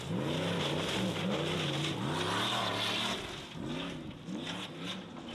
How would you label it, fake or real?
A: real